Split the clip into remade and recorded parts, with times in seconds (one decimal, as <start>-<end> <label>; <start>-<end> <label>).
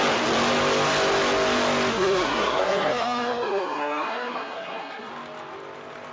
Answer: 0.0-1.9 recorded; 1.9-5.1 remade; 5.1-6.1 recorded